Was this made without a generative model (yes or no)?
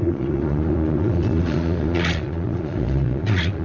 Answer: no